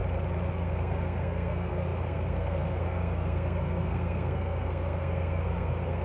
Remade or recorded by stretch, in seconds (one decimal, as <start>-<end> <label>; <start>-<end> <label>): 0.0-0.5 recorded; 0.5-6.0 remade